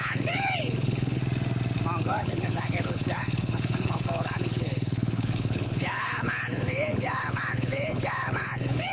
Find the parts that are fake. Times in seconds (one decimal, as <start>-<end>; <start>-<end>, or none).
0.0-1.2; 2.0-8.9